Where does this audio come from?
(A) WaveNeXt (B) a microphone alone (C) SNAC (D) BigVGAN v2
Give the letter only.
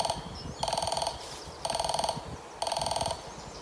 B